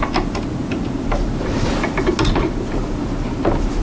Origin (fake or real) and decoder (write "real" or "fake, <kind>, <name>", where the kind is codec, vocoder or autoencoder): real